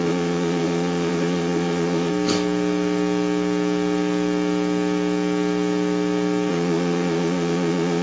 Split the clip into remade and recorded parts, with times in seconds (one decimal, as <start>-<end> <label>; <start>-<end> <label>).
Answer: 0.0-2.1 remade; 2.1-6.5 recorded; 6.5-8.0 remade